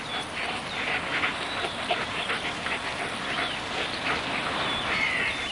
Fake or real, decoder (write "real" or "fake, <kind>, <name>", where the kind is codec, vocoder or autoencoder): real